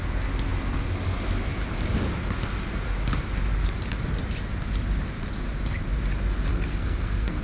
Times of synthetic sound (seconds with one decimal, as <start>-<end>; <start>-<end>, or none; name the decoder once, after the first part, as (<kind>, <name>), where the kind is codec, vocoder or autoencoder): 6.5-7.4 (codec, SNAC)